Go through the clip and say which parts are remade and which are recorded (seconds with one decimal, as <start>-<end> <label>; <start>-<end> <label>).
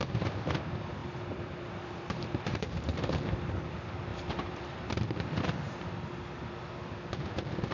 0.0-1.0 recorded; 1.0-3.3 remade; 3.3-4.1 recorded; 4.1-5.0 remade; 5.0-7.7 recorded